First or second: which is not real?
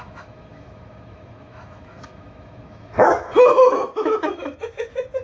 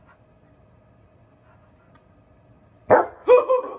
first